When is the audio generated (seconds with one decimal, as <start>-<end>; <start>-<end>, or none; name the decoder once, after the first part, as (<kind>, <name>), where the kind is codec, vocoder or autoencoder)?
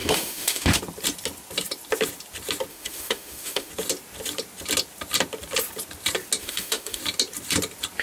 0.0-0.8 (autoencoder, DAC-VAE); 2.7-3.7; 6.4-7.0